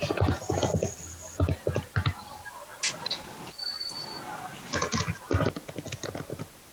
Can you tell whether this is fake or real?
real